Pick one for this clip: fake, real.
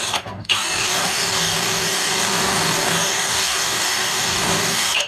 fake